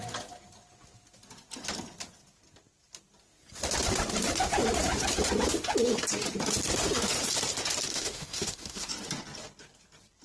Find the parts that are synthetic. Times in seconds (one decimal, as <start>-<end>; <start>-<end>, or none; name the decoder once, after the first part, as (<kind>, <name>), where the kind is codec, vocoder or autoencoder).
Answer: 7.9-8.9 (autoencoder, DAC-VAE)

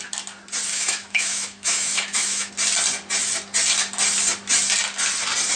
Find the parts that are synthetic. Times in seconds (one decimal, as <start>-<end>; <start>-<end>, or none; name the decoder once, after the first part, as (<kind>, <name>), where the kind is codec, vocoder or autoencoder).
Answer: 0.7-2.5 (autoencoder, DAC-VAE)

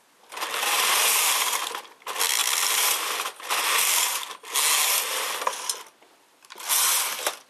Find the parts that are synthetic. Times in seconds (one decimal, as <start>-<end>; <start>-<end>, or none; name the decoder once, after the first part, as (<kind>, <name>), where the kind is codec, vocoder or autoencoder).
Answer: none

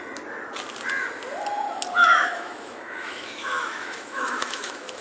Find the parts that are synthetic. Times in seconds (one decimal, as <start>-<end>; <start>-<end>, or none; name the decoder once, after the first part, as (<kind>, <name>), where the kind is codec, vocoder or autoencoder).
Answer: 2.0-5.0 (autoencoder, DAC-VAE)

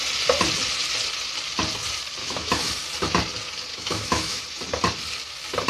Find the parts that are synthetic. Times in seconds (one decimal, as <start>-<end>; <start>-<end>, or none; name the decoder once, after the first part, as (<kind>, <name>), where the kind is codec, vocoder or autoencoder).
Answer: 2.2-2.7 (autoencoder, DAC-VAE); 3.7-4.4

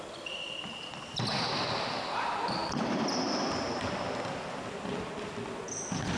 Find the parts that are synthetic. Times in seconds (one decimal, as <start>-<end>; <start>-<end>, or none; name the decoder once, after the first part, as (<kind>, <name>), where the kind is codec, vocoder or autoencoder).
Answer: none